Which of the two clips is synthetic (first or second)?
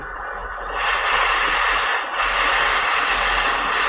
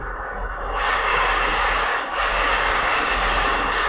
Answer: second